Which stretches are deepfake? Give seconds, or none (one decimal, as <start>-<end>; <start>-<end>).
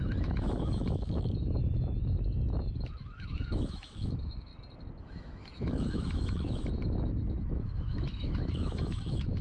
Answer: 0.0-4.5; 5.0-9.4